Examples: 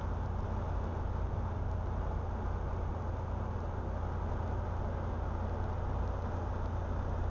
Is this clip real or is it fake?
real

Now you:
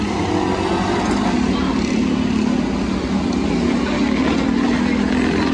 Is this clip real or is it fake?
real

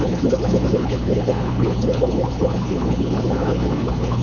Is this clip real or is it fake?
fake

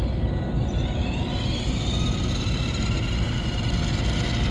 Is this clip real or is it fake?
real